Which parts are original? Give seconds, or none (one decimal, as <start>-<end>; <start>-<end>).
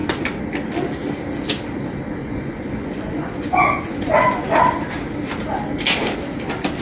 0.0-2.2; 4.4-6.8